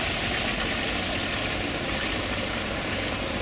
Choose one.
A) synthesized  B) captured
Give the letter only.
A